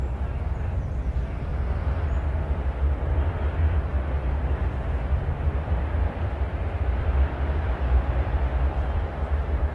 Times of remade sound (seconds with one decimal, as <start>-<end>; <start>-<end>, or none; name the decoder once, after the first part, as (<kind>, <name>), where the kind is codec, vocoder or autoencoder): 0.0-1.5 (vocoder, BigVGAN v2); 2.3-3.9; 4.4-9.7